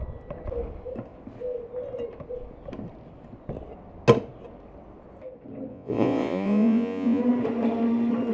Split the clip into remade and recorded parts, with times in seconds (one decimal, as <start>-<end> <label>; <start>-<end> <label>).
0.0-5.7 recorded; 5.7-7.2 remade; 7.2-8.3 recorded

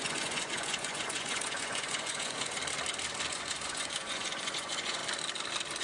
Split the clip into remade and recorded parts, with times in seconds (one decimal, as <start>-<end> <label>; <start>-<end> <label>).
0.0-2.6 remade; 2.6-3.3 recorded; 3.3-5.0 remade; 5.0-5.8 recorded

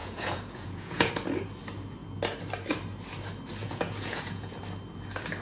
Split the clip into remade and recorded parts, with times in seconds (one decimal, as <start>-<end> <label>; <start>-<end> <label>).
0.0-1.1 remade; 1.1-3.6 recorded; 3.6-4.5 remade; 4.5-5.4 recorded

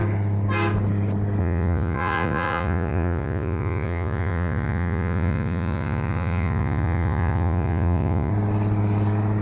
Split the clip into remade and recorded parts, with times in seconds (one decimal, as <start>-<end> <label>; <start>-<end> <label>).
0.0-1.4 recorded; 1.4-8.3 remade; 8.3-9.4 recorded